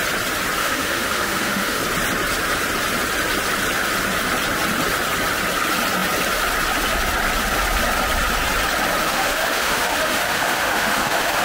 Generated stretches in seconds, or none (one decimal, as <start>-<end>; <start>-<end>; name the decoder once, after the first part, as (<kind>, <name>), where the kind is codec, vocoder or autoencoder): 0.6-1.8 (autoencoder, DAC-VAE); 9.0-11.4